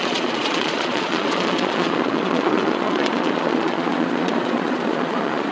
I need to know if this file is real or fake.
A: fake